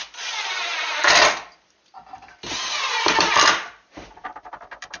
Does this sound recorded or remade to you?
recorded